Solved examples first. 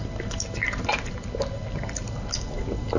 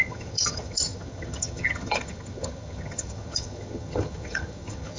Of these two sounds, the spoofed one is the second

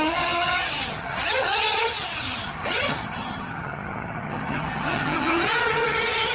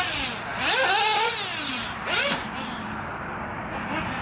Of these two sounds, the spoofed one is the first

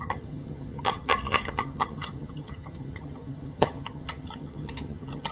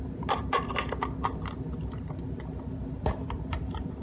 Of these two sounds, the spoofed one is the first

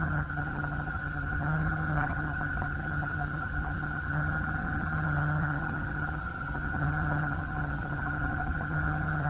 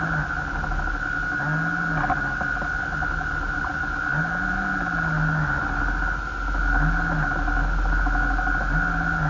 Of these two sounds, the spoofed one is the first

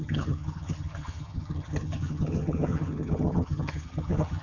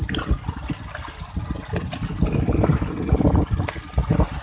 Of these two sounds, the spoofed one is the first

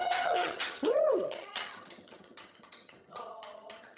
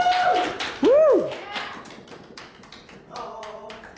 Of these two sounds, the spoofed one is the first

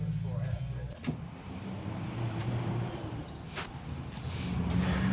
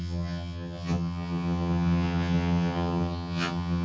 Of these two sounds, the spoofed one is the second